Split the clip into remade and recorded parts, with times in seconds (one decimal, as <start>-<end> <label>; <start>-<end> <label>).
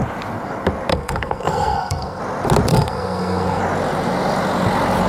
0.0-0.9 recorded; 0.9-2.2 remade; 2.2-2.7 recorded; 2.7-3.6 remade; 3.6-5.1 recorded